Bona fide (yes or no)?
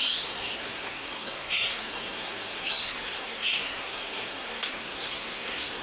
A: no